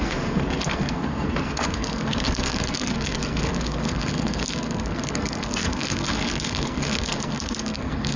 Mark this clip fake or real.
fake